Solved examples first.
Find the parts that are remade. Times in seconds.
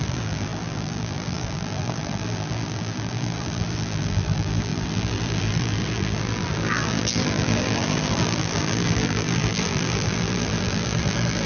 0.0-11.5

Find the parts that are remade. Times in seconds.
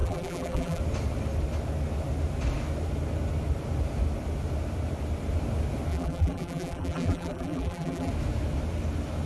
0.0-0.8; 5.9-8.1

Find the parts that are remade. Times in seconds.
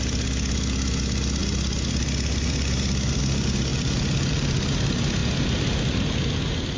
none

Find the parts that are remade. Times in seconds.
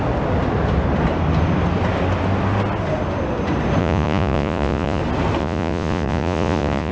3.8-5.0; 5.4-6.9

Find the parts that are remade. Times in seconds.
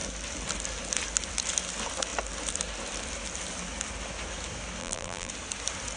4.8-5.3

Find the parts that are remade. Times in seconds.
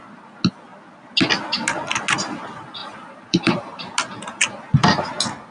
2.8-3.9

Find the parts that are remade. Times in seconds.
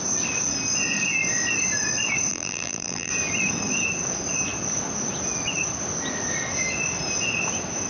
2.3-3.1